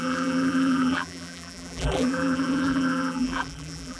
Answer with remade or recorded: remade